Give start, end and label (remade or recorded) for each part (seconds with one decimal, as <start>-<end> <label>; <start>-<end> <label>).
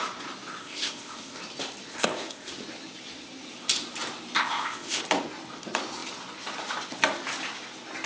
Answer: 0.0-0.6 recorded; 0.6-1.4 remade; 1.4-1.9 recorded; 1.9-2.5 remade; 2.5-4.4 recorded; 4.4-5.0 remade; 5.0-8.1 recorded